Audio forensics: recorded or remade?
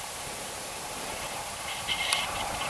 remade